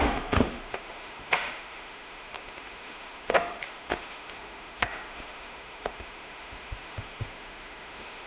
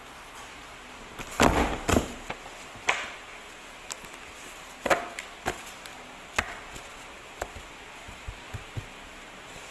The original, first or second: second